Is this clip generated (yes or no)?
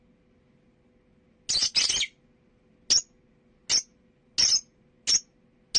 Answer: no